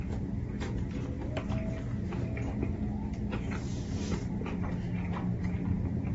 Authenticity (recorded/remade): recorded